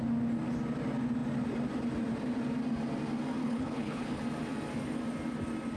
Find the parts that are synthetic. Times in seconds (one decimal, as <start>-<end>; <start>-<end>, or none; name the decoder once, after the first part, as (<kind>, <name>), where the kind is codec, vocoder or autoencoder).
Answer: 3.4-4.2 (codec, HILCodec)